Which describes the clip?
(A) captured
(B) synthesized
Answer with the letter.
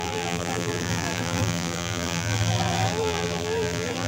B